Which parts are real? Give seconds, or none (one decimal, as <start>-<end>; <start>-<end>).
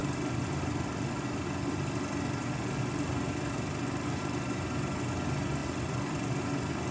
2.4-5.6; 6.4-6.9